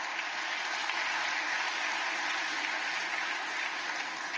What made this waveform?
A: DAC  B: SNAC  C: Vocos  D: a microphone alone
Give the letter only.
D